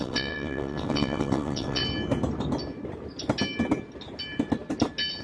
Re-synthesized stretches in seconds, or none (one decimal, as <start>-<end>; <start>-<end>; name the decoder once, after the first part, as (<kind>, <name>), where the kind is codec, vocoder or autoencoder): 0.0-1.8 (vocoder, WaveNeXt)